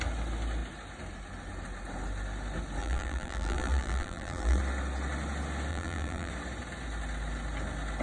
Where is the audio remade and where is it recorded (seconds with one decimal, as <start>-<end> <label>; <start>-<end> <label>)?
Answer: 0.0-2.8 recorded; 2.8-4.6 remade; 4.6-5.7 recorded; 5.7-6.3 remade; 6.3-8.0 recorded